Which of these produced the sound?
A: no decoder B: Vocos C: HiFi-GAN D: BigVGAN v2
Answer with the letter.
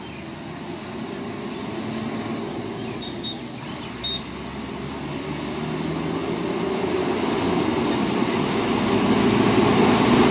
A